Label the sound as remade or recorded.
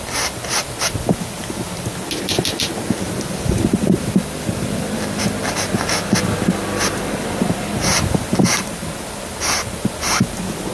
recorded